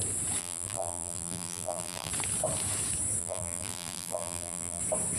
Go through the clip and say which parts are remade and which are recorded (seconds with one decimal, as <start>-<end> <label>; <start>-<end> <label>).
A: 0.0-0.4 recorded; 0.4-2.1 remade; 2.1-3.2 recorded; 3.2-4.8 remade; 4.8-5.2 recorded